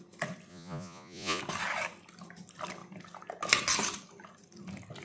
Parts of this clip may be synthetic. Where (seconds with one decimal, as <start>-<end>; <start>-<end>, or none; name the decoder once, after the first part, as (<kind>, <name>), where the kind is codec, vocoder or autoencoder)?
0.5-1.4 (vocoder, Vocos)